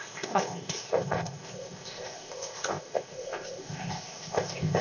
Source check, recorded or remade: remade